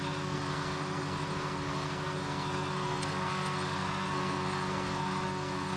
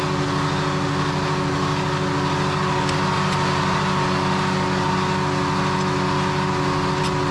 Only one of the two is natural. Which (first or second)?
second